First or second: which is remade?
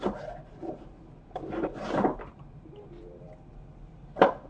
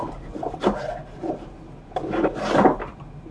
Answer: first